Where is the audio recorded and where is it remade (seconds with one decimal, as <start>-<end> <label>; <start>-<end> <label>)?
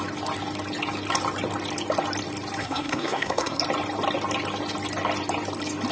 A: 0.0-2.6 recorded; 2.6-3.6 remade; 3.6-5.9 recorded